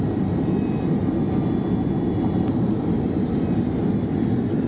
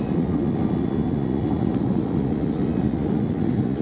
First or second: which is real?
first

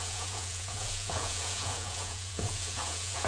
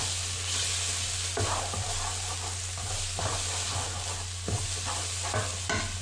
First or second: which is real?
second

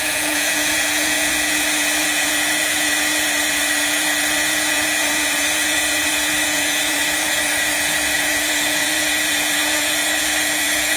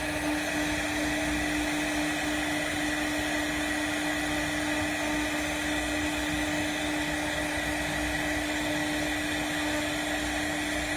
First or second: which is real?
second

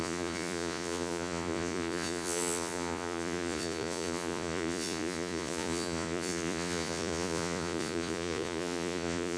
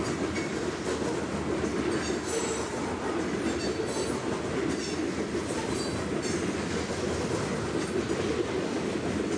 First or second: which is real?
second